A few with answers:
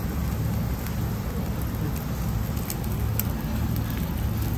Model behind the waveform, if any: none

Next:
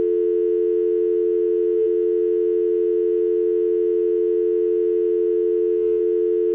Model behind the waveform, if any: none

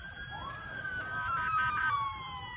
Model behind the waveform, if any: vocoder, BigVGAN v2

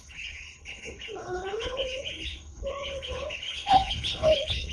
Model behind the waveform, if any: codec, HILCodec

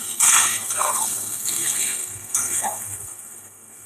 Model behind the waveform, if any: codec, SNAC